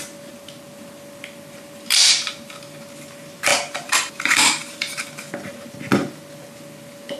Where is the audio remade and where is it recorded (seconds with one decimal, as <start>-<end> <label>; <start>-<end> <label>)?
0.0-3.5 recorded; 3.5-5.0 remade; 5.0-7.2 recorded